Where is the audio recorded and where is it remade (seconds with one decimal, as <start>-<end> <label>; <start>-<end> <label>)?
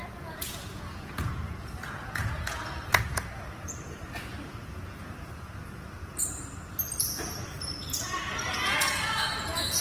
0.0-6.2 remade; 6.2-8.5 recorded; 8.5-9.8 remade